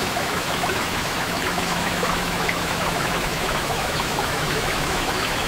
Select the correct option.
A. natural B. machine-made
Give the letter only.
B